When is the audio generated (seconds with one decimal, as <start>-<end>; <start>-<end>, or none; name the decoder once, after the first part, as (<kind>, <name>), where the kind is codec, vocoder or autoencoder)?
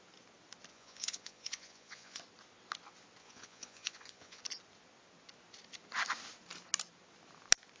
0.7-2.2 (vocoder, Vocos); 3.2-4.4